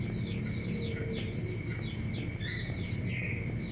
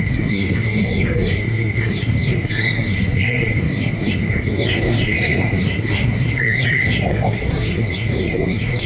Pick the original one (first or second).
first